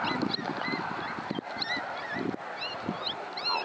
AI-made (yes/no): no